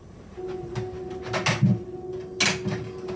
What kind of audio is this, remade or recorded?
recorded